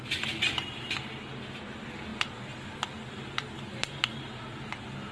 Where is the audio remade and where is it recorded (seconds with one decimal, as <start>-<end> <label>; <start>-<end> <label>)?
0.0-5.1 recorded